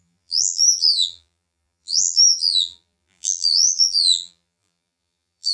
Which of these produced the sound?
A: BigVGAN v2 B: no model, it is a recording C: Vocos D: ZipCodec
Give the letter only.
A